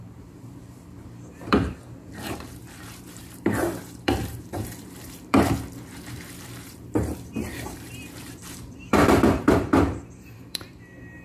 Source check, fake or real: fake